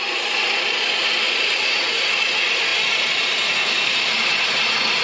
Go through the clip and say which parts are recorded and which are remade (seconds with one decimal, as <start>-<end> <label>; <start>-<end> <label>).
0.0-2.7 recorded; 2.7-5.0 remade